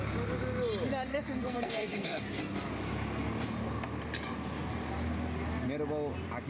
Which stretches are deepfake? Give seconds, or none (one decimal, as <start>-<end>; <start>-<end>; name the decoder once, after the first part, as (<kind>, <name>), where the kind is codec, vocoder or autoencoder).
1.1-2.2 (codec, SNAC)